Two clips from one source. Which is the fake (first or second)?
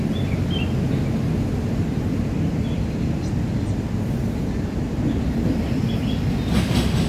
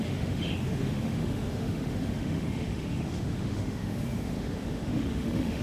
second